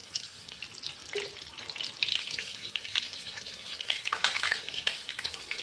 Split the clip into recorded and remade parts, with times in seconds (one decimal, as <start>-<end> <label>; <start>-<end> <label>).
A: 0.0-0.6 remade; 0.6-2.1 recorded; 2.1-5.6 remade